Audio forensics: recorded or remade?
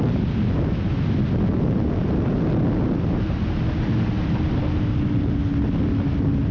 recorded